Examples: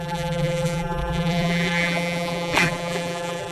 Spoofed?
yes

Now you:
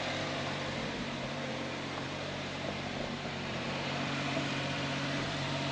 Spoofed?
yes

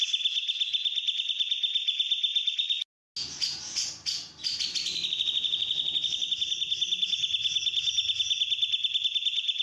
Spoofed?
no